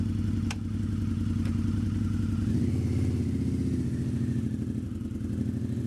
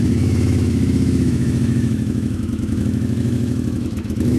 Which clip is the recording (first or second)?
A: first